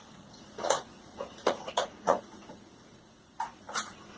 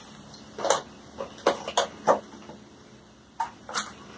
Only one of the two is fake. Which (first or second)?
first